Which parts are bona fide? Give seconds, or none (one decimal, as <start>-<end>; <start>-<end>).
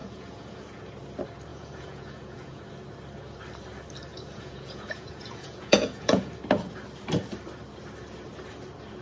0.8-1.5; 2.6-4.1; 6.3-9.0